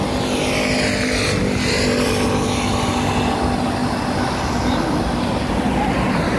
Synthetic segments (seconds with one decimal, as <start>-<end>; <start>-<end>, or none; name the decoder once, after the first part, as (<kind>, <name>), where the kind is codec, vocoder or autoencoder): none